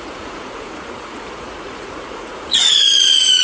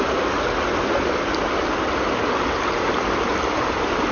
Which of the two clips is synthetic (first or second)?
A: first